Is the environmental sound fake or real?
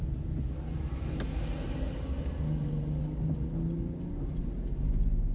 real